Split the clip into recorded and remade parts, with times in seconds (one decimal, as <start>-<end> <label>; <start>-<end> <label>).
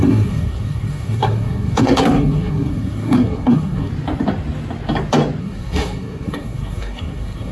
0.0-3.9 remade; 3.9-5.4 recorded; 5.4-7.5 remade